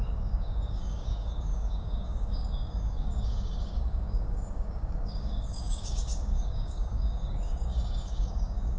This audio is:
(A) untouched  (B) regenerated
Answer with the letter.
B